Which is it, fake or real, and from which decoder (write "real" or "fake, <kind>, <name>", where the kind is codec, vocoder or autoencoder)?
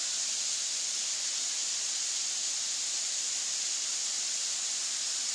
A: real